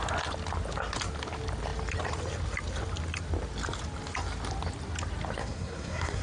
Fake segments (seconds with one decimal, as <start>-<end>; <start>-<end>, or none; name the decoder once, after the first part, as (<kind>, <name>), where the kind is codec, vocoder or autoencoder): 5.4-6.2 (codec, SNAC)